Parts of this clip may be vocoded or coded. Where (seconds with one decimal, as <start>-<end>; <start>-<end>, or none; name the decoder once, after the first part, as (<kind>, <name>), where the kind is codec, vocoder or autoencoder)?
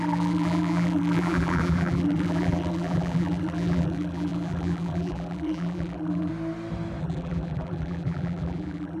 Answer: 0.0-6.3 (vocoder, BigVGAN v2); 7.0-9.0